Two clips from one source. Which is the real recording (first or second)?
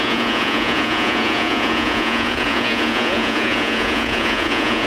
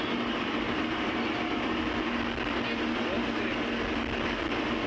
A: second